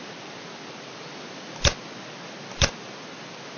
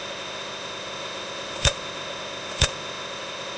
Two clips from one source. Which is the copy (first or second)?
second